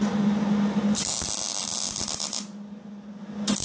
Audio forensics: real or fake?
real